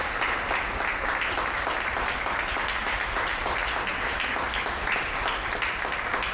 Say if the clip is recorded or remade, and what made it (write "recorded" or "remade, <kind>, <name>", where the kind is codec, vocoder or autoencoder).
recorded